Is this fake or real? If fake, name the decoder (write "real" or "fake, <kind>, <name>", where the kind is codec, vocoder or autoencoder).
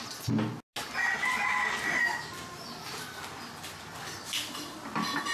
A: real